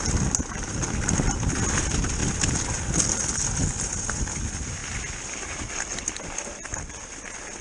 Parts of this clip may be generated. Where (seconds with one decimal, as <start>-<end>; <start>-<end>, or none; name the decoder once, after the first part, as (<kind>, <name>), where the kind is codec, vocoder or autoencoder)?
none